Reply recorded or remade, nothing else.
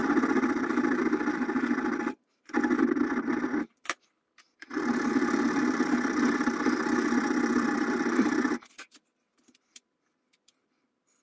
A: remade